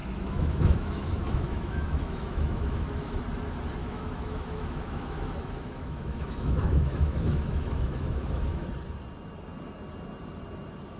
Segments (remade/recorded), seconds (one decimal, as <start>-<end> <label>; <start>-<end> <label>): 0.0-3.2 remade; 3.2-3.8 recorded; 3.8-8.7 remade; 8.7-11.0 recorded